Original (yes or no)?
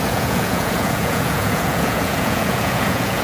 no